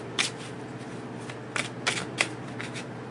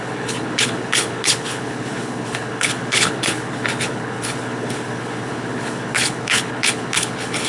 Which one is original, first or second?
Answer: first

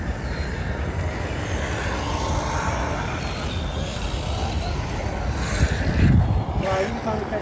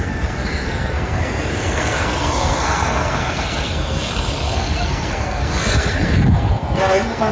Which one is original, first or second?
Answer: first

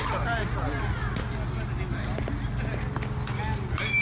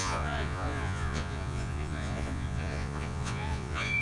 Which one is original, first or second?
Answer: first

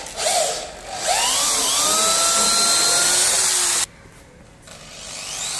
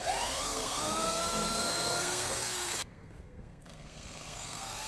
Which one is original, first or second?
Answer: first